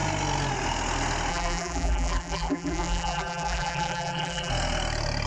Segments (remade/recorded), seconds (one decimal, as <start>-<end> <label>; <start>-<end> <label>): 0.0-1.3 recorded; 1.3-4.5 remade; 4.5-5.3 recorded